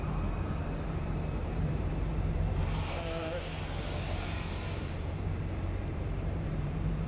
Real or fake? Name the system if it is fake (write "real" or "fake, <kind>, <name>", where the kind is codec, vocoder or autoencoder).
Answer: fake, vocoder, BigVGAN v2